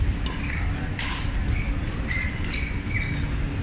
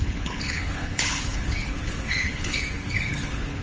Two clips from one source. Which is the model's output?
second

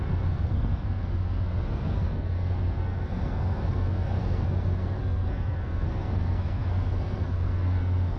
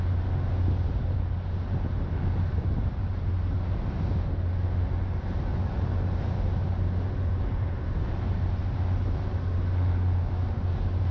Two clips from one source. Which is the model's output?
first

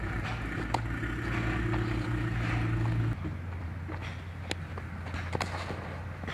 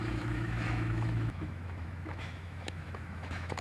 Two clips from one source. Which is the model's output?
second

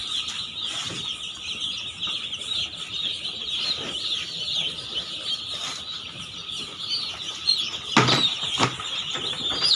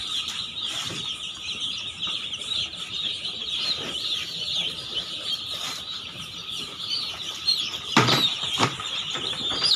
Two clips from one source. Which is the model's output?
second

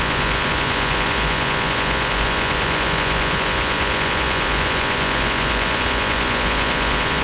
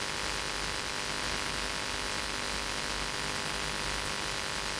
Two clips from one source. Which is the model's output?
first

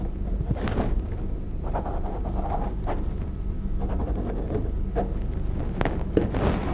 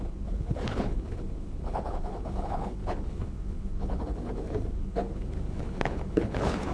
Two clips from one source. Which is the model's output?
second